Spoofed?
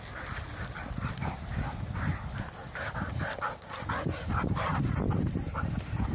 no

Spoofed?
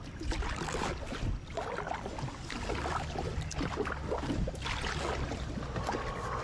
no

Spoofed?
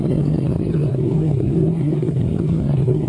yes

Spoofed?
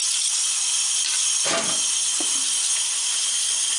no